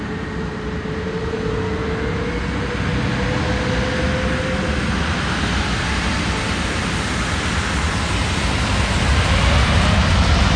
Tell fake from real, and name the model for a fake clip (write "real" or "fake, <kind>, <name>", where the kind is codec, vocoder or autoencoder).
real